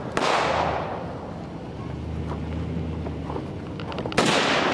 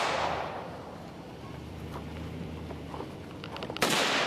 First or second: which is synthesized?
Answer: second